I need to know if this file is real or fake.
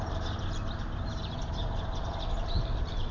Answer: fake